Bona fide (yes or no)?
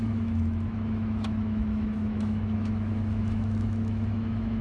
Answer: no